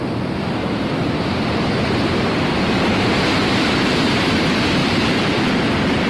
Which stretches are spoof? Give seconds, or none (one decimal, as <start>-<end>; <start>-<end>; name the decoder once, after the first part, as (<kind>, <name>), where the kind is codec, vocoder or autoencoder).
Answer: 0.6-4.3 (vocoder, BigVGAN v2); 4.8-5.4